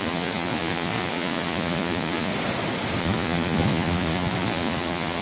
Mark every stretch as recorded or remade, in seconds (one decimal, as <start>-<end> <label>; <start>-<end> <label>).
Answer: 0.0-2.3 remade; 2.3-3.0 recorded; 3.0-5.2 remade